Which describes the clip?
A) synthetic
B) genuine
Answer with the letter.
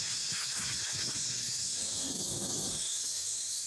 A